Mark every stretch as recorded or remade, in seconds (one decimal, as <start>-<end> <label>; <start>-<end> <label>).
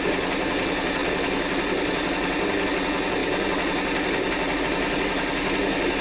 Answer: 0.0-6.0 recorded